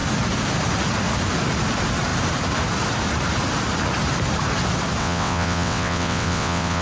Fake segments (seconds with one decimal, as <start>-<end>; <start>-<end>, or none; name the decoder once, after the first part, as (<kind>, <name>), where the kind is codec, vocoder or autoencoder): 5.0-6.8 (vocoder, WaveNeXt)